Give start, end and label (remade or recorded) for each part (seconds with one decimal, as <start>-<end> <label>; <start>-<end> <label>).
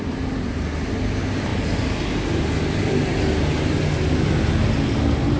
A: 0.0-5.4 recorded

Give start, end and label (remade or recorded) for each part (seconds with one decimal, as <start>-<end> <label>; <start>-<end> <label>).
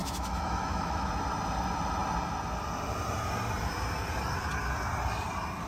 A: 0.0-1.1 remade; 1.1-5.7 recorded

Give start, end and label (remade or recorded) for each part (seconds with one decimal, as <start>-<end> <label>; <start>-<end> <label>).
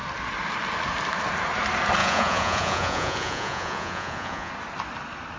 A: 0.0-2.0 recorded; 2.0-4.5 remade; 4.5-5.4 recorded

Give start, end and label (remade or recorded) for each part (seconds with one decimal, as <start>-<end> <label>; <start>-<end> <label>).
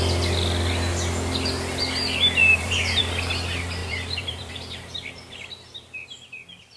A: 0.0-2.4 recorded; 2.4-3.0 remade; 3.0-3.8 recorded; 3.8-4.5 remade; 4.5-6.8 recorded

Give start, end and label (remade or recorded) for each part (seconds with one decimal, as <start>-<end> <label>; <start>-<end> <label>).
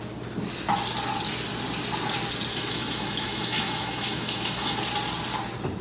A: 0.0-2.5 recorded; 2.5-4.8 remade; 4.8-5.8 recorded